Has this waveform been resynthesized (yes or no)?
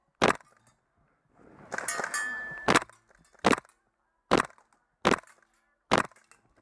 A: no